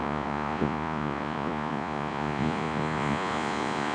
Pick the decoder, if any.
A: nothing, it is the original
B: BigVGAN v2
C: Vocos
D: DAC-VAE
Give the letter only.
C